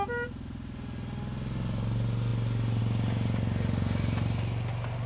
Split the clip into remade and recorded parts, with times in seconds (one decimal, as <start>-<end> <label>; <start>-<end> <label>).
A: 0.0-5.1 recorded